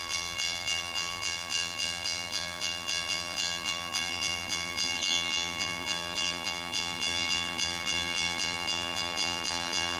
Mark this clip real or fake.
fake